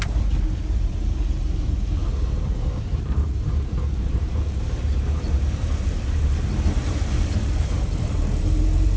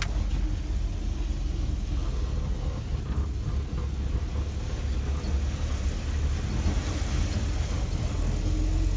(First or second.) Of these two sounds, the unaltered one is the second